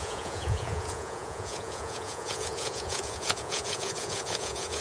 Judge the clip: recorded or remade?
remade